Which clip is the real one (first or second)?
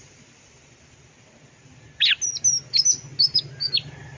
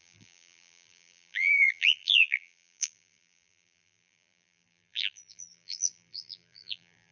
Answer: first